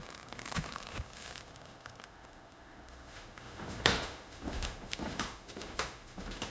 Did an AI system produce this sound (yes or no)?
yes